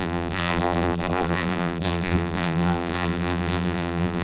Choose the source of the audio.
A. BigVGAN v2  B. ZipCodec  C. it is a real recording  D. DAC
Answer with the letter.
A